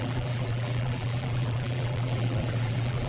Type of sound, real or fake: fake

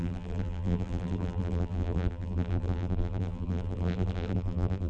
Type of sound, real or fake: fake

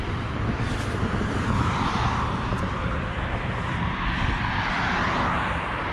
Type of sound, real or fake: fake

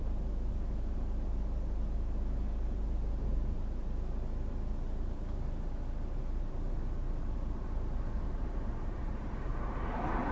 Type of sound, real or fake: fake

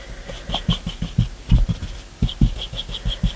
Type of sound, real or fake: fake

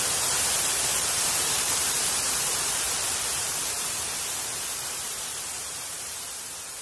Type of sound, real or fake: fake